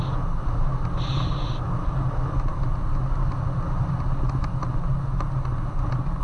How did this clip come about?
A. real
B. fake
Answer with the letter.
A